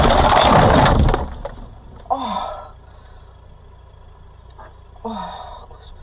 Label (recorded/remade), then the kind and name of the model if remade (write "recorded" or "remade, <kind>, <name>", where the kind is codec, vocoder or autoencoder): recorded